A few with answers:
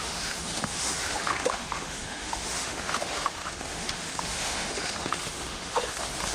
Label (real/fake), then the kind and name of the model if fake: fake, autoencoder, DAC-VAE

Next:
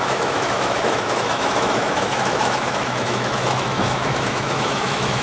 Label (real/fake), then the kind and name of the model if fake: fake, autoencoder, DAC-VAE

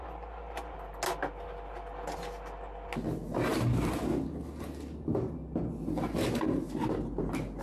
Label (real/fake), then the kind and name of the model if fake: real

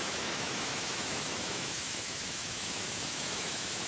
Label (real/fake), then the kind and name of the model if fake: fake, autoencoder, DAC-VAE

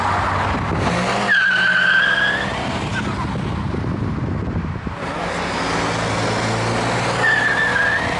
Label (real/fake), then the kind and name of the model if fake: real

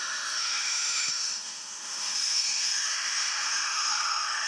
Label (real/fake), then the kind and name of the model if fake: fake, autoencoder, DAC-VAE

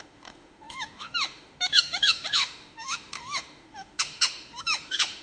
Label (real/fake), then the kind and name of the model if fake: fake, autoencoder, DAC-VAE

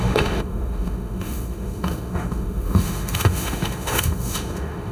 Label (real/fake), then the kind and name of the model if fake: fake, autoencoder, DAC-VAE